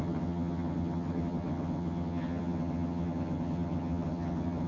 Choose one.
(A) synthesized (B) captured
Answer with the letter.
A